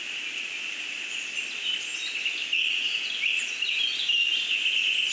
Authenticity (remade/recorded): recorded